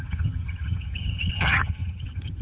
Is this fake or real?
fake